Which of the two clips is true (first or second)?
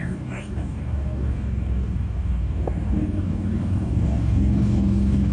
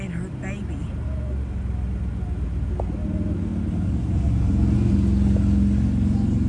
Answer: second